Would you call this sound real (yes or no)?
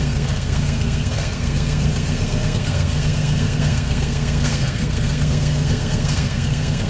no